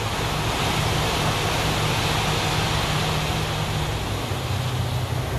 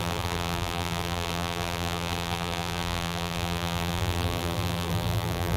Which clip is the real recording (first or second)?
first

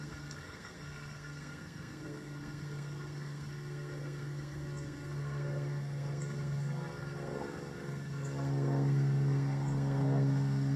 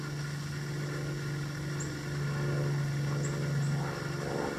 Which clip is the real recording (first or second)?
second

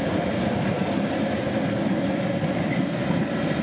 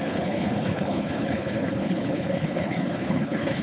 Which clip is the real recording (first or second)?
first